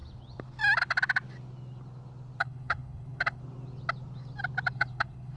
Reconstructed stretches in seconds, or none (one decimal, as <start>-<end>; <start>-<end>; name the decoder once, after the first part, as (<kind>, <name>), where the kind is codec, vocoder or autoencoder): 2.4-3.4 (codec, HILCodec); 4.7-5.4